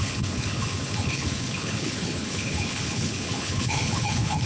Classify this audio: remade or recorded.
remade